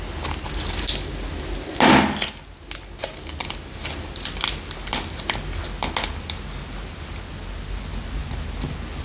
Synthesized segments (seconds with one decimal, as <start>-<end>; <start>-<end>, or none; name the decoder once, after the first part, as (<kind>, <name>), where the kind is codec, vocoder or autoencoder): none